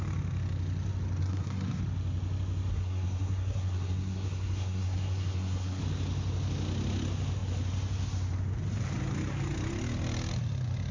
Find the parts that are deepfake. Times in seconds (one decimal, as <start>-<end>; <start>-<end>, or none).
1.2-1.8; 2.7-5.8